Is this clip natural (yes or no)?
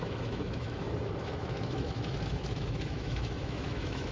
no